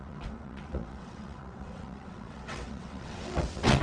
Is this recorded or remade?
remade